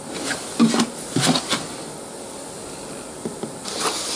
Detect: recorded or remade recorded